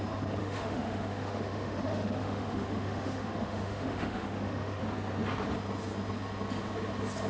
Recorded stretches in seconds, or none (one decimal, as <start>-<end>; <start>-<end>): 0.0-0.4; 4.8-7.3